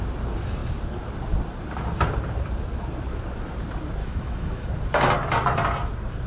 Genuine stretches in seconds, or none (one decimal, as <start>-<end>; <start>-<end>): 0.0-4.0; 4.7-6.3